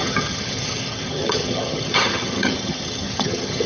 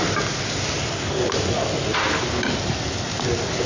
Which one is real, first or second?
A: second